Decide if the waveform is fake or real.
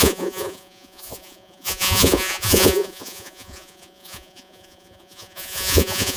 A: fake